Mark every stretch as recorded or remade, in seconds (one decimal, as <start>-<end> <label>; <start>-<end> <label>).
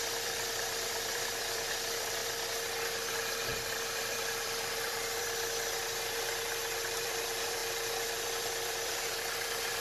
0.0-2.2 remade; 2.2-3.1 recorded; 3.1-9.8 remade